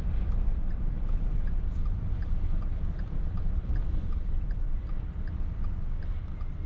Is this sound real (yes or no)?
no